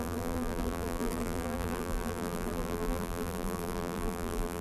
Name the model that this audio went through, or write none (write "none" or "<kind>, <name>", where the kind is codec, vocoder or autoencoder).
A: vocoder, BigVGAN v2